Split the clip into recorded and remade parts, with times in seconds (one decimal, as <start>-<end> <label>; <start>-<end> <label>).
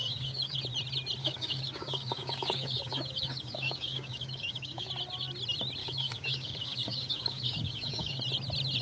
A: 0.0-0.6 remade; 0.6-1.2 recorded; 1.2-4.9 remade; 4.9-5.8 recorded; 5.8-8.2 remade; 8.2-8.8 recorded